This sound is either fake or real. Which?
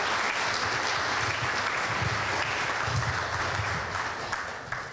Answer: real